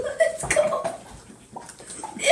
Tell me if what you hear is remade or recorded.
recorded